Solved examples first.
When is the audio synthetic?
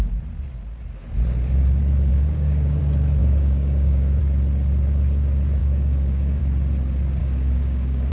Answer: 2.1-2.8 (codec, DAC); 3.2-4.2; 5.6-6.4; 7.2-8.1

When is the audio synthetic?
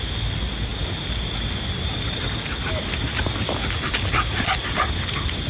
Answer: none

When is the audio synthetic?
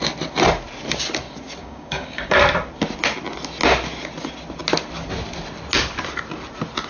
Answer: 1.6-2.4 (codec, DAC)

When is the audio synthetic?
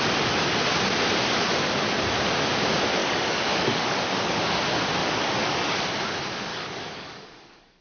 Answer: 3.0-4.6 (codec, DAC); 5.0-5.8; 6.5-7.8